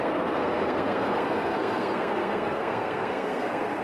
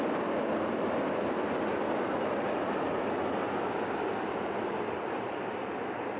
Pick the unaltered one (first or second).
second